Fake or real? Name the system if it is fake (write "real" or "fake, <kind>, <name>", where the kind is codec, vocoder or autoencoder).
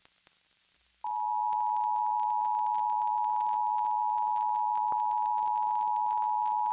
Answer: real